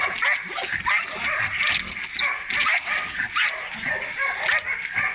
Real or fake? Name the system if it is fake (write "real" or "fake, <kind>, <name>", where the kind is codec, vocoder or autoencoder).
real